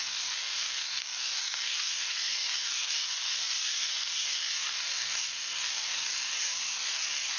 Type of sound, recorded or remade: remade